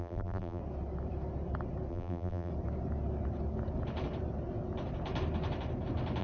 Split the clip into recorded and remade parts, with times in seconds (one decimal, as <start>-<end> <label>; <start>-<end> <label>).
0.0-0.6 remade; 0.6-1.9 recorded; 1.9-2.5 remade; 2.5-6.2 recorded